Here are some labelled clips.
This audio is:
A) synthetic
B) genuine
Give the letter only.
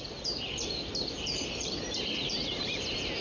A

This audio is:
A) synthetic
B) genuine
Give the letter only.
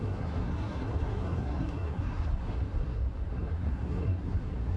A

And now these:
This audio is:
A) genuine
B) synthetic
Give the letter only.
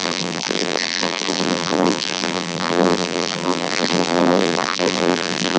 B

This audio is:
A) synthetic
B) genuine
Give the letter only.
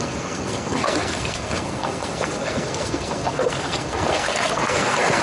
A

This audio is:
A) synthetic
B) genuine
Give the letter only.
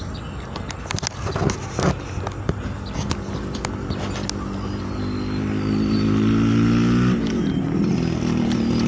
B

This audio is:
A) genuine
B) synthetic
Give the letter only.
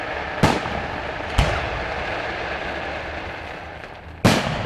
A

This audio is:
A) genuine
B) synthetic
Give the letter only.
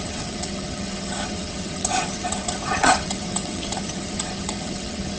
B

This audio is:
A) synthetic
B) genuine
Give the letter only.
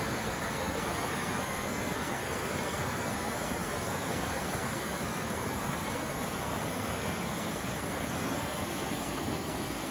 A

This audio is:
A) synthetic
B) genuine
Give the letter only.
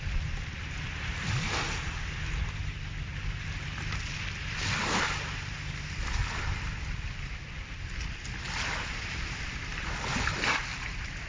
B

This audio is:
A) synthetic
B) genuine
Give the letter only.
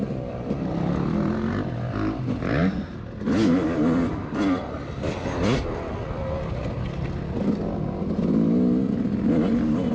B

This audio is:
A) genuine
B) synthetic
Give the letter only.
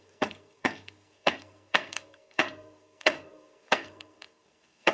B